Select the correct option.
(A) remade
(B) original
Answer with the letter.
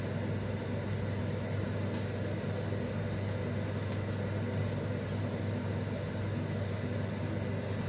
B